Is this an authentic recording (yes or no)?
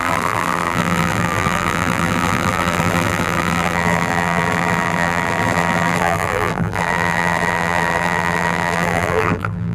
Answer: no